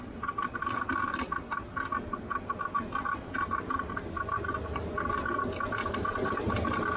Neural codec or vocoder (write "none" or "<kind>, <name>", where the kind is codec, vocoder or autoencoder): none